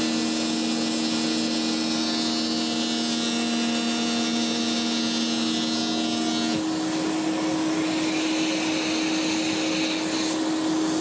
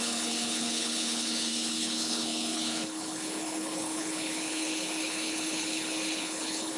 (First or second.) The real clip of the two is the first